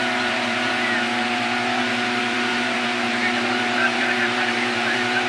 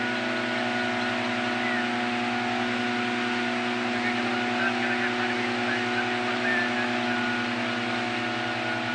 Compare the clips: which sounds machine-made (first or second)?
first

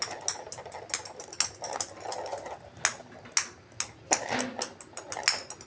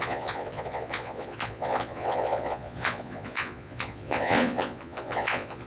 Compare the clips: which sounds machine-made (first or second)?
second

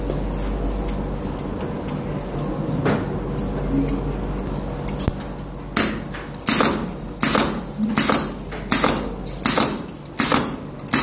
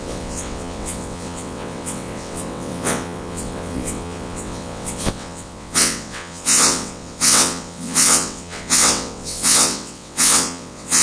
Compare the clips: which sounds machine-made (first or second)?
second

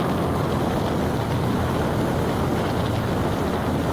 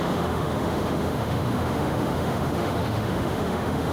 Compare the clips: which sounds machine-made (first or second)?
second